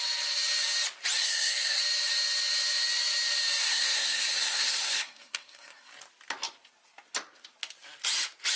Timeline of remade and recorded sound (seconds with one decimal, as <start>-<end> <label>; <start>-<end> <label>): 0.0-1.2 recorded; 1.2-1.8 remade; 1.8-3.6 recorded; 3.6-5.9 remade; 5.9-8.6 recorded